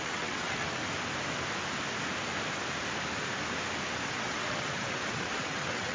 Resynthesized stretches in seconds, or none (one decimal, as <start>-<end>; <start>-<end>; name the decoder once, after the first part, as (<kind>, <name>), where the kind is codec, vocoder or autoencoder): 0.0-0.8 (vocoder, WaveNeXt); 4.2-5.9